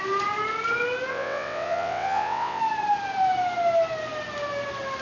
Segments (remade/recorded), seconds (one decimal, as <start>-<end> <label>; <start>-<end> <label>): 0.0-1.1 recorded; 1.1-2.6 remade; 2.6-5.0 recorded

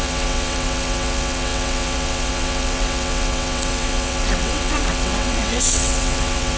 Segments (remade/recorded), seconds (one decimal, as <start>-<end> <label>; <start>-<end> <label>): 0.0-6.6 remade

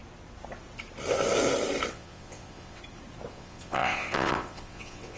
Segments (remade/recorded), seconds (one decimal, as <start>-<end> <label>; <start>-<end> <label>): 0.0-1.9 recorded; 1.9-2.8 remade; 2.8-3.3 recorded; 3.3-5.2 remade

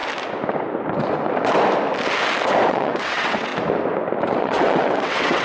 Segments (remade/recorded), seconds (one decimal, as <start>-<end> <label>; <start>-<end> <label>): 0.0-2.7 recorded; 2.7-3.5 remade; 3.5-4.4 recorded; 4.4-5.4 remade